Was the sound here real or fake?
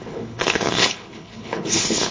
fake